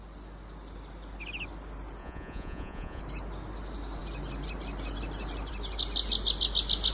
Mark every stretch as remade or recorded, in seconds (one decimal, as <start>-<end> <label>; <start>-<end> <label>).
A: 0.0-2.0 recorded; 2.0-3.0 remade; 3.0-6.9 recorded